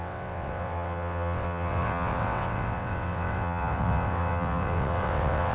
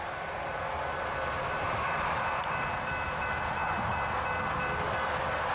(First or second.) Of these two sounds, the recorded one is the second